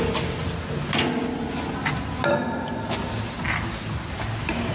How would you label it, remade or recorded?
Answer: recorded